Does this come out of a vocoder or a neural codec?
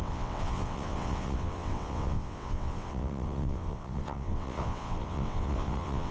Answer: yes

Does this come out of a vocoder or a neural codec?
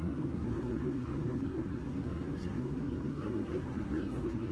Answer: yes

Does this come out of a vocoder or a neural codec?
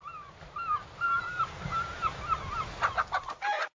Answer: no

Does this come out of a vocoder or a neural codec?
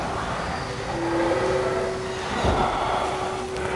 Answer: no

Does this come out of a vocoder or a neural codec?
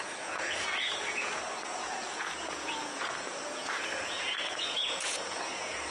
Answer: yes